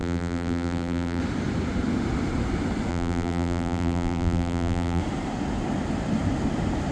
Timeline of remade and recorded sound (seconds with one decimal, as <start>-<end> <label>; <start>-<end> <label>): 0.0-1.2 remade; 1.2-2.9 recorded; 2.9-5.0 remade; 5.0-6.9 recorded